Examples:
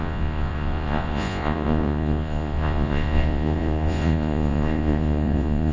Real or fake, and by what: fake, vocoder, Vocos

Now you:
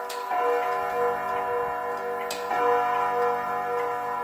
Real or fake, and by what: real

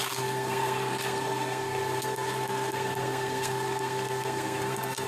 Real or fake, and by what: fake, codec, SNAC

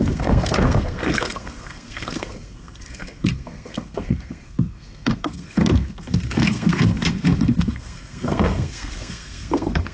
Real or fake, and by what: fake, codec, SNAC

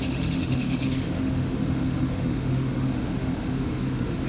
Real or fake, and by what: fake, autoencoder, DAC-VAE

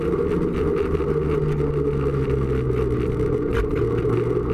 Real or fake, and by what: real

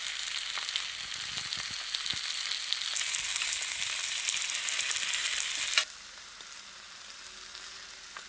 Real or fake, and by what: real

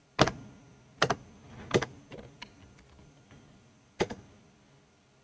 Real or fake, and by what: real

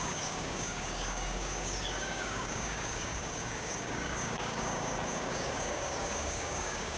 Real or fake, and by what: fake, codec, DAC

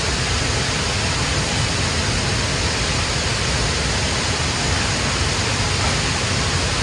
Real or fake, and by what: real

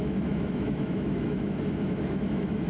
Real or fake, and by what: fake, autoencoder, DAC-VAE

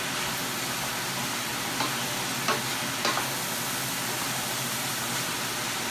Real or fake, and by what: real